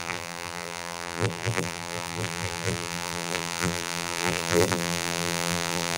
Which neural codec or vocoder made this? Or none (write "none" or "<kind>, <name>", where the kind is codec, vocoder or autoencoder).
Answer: vocoder, BigVGAN v2